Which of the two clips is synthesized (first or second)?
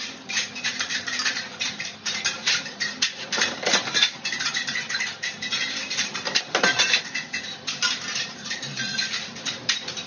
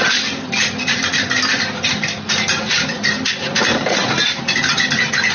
first